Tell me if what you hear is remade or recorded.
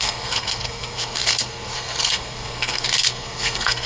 remade